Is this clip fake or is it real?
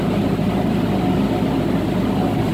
real